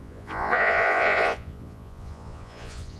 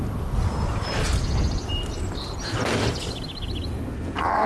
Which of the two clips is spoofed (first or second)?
first